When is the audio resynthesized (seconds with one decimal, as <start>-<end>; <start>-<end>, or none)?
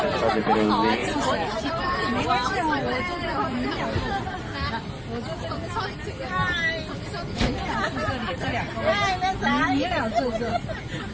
1.0-3.8; 9.3-11.1